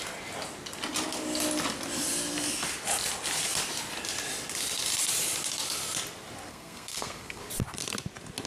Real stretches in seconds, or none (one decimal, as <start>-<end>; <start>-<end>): 0.0-6.5; 7.4-8.5